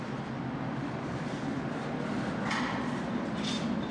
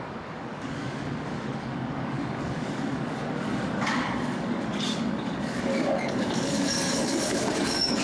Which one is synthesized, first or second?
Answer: second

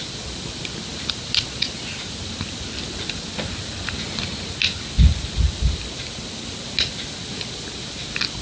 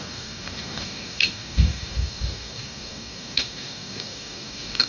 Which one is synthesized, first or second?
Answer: second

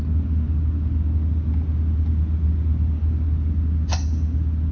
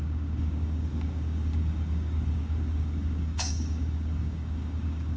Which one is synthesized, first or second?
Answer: second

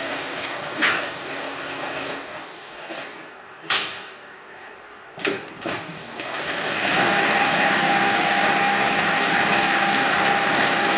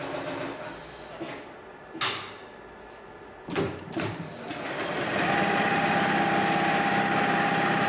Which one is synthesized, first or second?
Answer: first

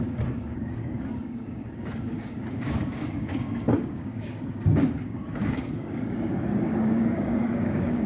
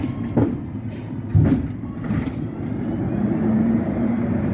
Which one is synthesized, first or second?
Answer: first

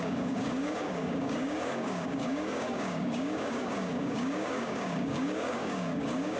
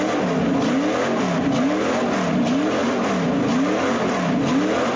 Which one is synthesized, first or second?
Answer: first